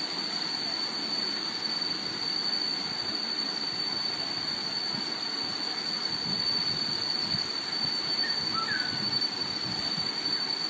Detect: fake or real real